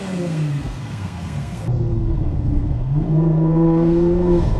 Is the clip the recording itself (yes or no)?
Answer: no